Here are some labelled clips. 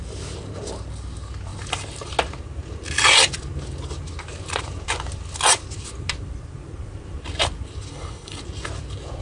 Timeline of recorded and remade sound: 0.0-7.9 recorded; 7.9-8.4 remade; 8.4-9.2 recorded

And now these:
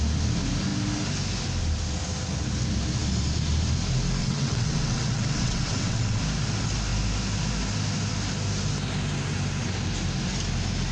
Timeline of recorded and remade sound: 0.0-4.2 recorded; 4.2-6.2 remade; 6.2-10.9 recorded

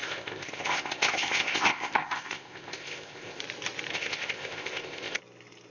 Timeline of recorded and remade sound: 0.0-3.4 remade; 3.4-3.9 recorded; 3.9-5.2 remade; 5.2-5.7 recorded

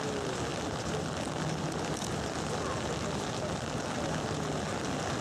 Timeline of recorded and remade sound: 0.0-5.2 recorded

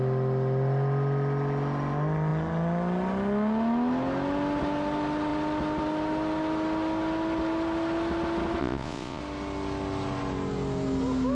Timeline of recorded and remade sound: 0.0-8.6 recorded; 8.6-9.2 remade; 9.2-11.3 recorded

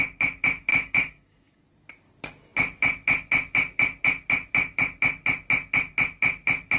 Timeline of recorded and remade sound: 0.0-0.7 recorded; 0.7-1.6 remade; 1.6-6.8 recorded

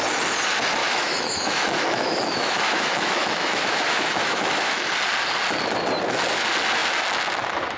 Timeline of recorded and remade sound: 0.0-0.8 recorded; 0.8-4.9 remade; 4.9-7.8 recorded